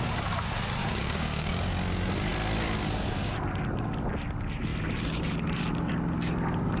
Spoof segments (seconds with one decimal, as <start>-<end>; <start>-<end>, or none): 0.8-1.5